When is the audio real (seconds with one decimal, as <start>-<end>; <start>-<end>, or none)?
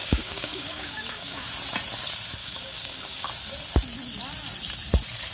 1.5-2.4; 3.3-5.3